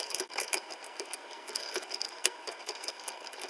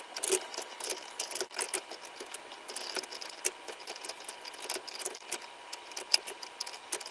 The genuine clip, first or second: second